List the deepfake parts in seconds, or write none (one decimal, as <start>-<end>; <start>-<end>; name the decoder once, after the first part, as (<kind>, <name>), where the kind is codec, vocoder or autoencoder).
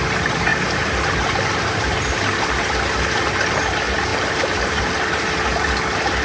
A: 0.5-2.1 (vocoder, BigVGAN v2); 4.1-4.8